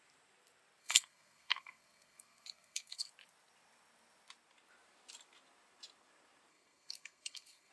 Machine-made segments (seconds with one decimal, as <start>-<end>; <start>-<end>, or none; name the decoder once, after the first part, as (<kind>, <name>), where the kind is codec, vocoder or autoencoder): 0.8-3.1 (codec, SNAC); 6.5-7.7